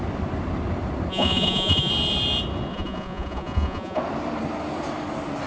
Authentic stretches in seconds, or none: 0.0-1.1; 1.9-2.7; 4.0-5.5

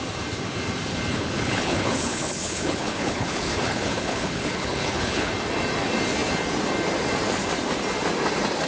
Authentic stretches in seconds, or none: 0.0-1.1; 5.3-8.7

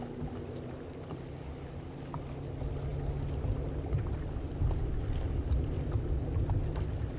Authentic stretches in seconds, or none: 0.0-7.2

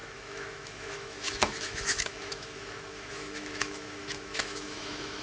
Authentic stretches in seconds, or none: none

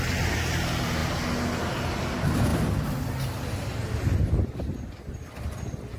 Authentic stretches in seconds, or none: 0.0-6.0

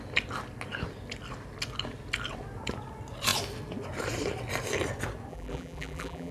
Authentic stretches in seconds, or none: 0.0-5.3

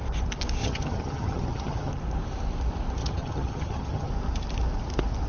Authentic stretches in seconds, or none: 0.0-0.6; 1.9-3.0; 4.1-5.3